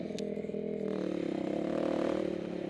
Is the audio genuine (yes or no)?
yes